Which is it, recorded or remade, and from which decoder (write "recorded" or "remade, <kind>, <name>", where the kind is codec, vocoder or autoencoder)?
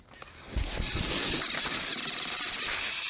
recorded